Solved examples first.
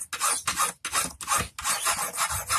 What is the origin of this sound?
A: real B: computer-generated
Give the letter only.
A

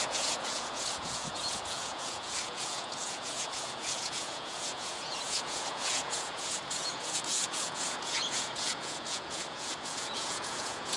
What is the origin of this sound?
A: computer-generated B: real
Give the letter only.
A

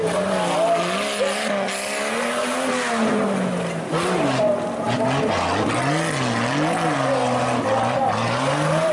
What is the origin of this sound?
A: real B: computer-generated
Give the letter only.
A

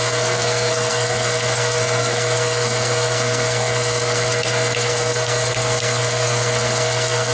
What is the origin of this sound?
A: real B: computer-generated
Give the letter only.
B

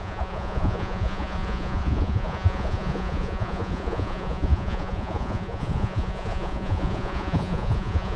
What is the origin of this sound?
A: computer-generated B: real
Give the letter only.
A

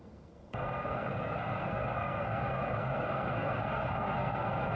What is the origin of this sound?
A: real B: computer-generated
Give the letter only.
B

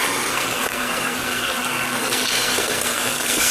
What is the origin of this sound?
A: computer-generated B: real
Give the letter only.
A